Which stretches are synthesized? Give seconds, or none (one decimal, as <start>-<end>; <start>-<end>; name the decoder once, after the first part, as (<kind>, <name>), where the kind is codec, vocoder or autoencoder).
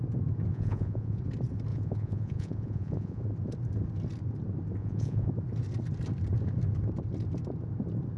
0.5-1.2 (vocoder, Vocos); 1.7-3.2; 4.8-5.3